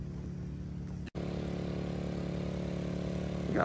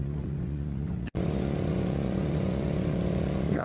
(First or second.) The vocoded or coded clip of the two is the second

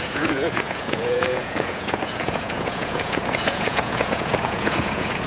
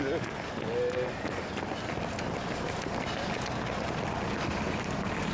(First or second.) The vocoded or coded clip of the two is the first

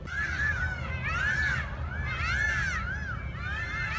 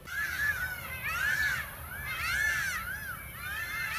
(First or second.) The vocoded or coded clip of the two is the second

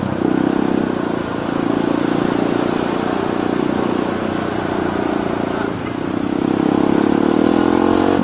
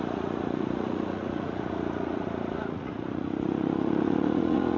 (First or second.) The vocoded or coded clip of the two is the second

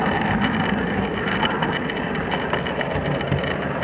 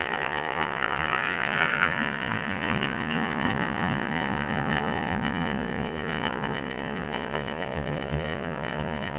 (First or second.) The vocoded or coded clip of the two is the second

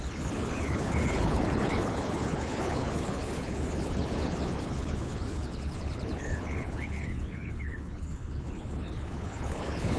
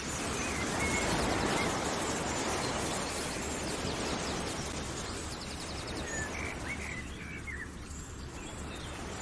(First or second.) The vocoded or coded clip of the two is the first